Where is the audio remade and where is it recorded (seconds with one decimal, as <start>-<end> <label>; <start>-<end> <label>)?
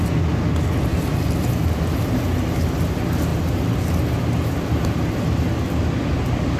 0.0-0.9 recorded; 0.9-1.6 remade; 1.6-6.6 recorded